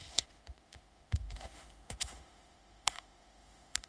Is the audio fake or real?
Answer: fake